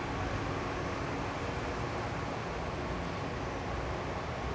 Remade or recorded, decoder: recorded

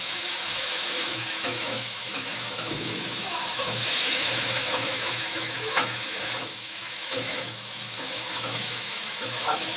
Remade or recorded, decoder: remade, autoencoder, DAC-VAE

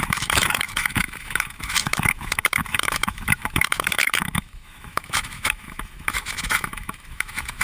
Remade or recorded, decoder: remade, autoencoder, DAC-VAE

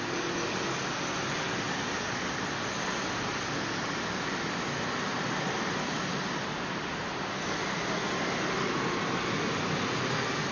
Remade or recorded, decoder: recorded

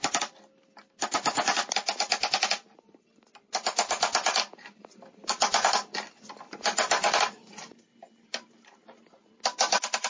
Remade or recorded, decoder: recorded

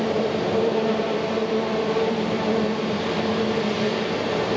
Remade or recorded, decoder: remade, vocoder, BigVGAN v2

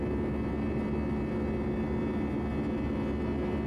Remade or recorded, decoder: recorded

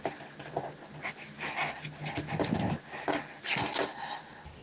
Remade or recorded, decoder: recorded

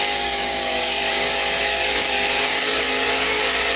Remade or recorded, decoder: remade, codec, DAC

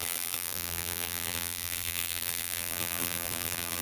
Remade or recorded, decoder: remade, vocoder, BigVGAN v2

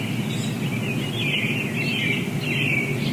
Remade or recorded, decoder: recorded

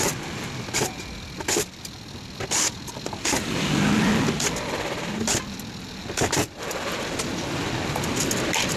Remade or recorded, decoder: recorded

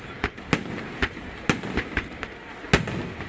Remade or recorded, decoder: recorded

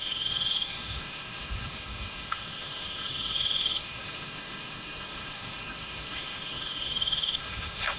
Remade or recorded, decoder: remade, autoencoder, DAC-VAE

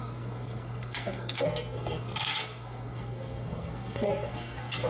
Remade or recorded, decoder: remade, codec, SNAC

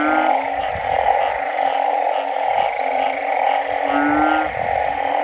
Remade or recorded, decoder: recorded